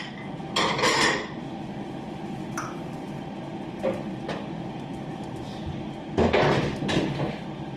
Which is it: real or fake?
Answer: fake